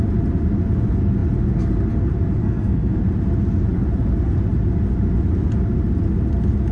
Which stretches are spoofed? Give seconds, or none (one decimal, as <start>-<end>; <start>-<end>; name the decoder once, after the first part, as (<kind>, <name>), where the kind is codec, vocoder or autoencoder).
2.4-3.0 (codec, SNAC)